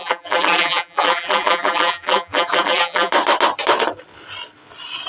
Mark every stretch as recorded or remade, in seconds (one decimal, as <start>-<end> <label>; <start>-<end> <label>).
0.0-3.1 remade; 3.1-5.1 recorded